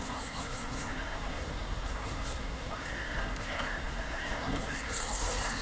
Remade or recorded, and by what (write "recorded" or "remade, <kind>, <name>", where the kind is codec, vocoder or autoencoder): remade, codec, SNAC